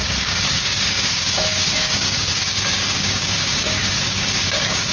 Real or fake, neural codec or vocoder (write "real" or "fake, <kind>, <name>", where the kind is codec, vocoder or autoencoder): fake, codec, DAC